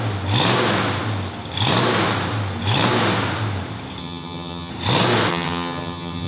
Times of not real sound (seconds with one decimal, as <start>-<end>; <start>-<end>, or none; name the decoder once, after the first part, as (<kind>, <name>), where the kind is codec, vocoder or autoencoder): 4.0-4.7 (vocoder, HiFi-GAN); 5.3-6.3